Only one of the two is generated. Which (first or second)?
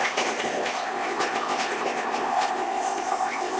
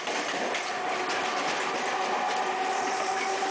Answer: first